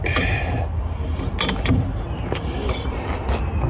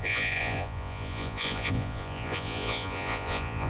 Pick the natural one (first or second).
first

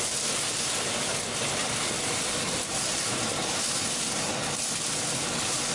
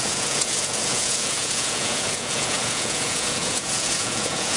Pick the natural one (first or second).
first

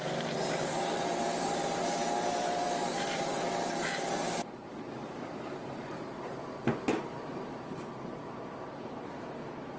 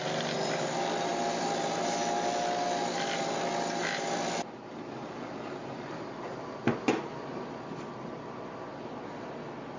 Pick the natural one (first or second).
second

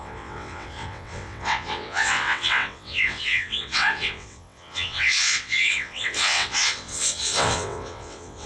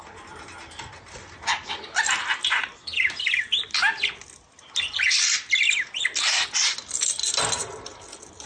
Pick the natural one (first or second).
second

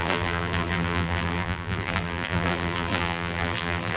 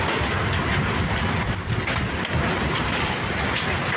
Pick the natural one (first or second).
second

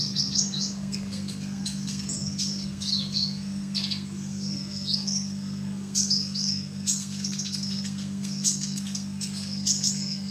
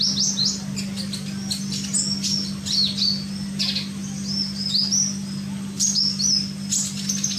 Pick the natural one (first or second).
second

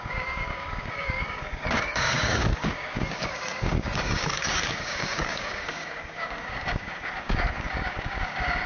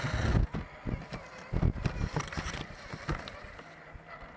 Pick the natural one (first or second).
second